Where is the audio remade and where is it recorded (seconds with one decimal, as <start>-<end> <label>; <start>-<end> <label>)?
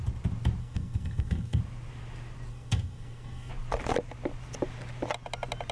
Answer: 0.0-0.6 recorded; 0.6-1.6 remade; 1.6-2.5 recorded; 2.5-3.5 remade; 3.5-5.7 recorded